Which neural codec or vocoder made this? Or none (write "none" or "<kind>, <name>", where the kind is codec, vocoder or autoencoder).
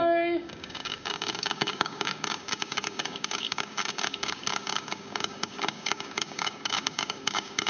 codec, DAC